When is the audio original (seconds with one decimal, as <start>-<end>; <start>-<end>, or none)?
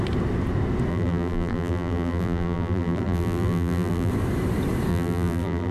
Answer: 0.0-0.9; 4.1-4.9